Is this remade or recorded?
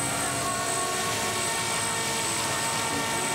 recorded